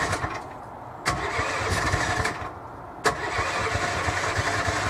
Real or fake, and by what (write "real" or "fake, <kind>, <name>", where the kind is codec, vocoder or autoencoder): real